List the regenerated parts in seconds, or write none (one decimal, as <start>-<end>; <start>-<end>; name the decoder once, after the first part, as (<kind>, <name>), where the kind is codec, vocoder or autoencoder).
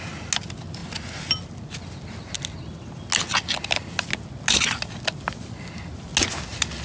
none